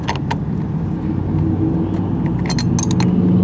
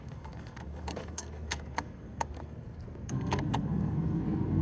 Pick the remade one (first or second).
second